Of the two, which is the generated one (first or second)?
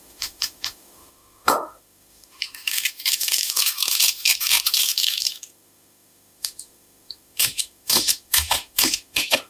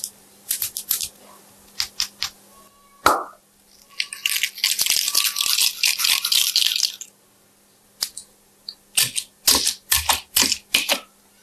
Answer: first